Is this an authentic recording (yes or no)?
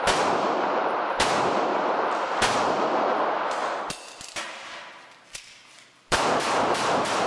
no